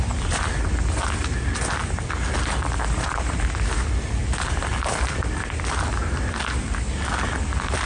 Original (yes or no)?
yes